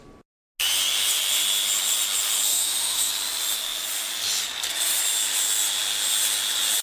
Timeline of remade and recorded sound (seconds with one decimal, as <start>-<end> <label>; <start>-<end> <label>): 0.0-2.5 recorded; 2.5-3.1 remade; 3.1-6.8 recorded